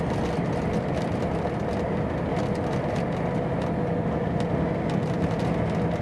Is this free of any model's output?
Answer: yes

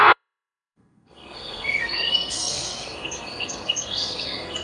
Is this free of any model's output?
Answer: no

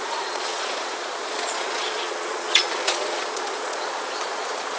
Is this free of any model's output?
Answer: no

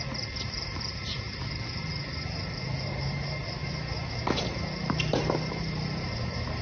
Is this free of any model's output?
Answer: no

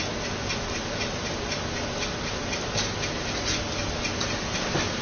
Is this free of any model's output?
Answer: yes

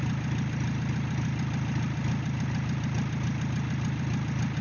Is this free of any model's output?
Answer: yes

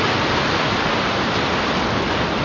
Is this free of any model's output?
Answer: yes